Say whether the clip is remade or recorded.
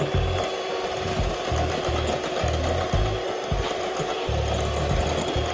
recorded